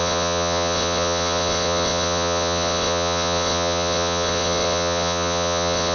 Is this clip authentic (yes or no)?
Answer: no